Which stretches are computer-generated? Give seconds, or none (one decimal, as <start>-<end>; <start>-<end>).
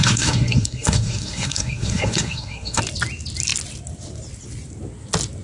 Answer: 0.0-2.8